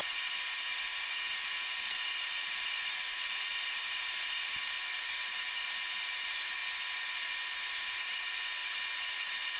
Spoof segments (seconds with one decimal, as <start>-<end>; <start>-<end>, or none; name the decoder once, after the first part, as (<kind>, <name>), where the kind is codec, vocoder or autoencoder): 0.0-6.6 (vocoder, BigVGAN v2); 7.2-8.6; 9.1-9.6